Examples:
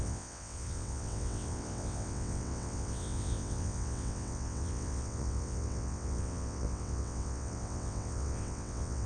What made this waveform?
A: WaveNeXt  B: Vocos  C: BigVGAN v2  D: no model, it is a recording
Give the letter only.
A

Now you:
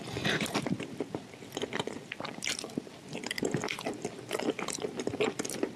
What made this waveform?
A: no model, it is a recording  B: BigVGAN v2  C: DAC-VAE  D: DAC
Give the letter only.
B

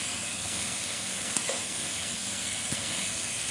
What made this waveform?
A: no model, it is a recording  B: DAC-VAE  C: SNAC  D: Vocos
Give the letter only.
C